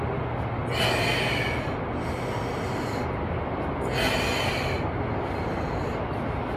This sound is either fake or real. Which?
real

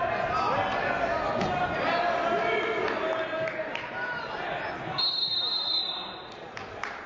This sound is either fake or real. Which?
real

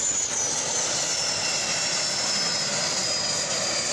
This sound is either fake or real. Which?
real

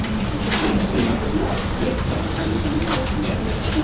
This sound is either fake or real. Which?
fake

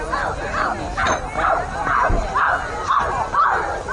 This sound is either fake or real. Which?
real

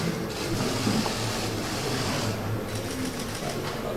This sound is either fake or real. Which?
real